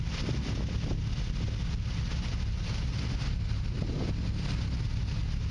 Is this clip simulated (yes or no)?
no